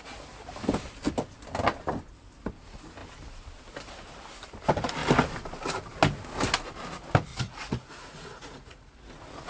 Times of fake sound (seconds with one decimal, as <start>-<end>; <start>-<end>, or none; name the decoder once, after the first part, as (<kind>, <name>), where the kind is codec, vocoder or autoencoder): 7.3-8.9 (vocoder, Vocos)